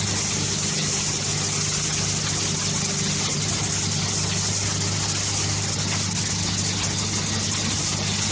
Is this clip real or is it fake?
real